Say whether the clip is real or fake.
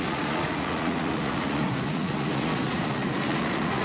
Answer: fake